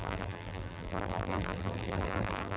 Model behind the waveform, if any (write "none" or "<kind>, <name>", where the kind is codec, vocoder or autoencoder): vocoder, BigVGAN v2